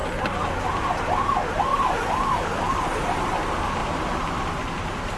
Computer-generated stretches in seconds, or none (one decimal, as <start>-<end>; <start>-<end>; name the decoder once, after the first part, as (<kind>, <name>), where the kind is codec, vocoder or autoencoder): 1.7-3.3 (vocoder, BigVGAN v2); 3.8-5.2